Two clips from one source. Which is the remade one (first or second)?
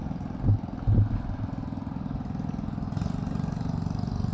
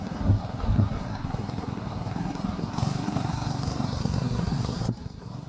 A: second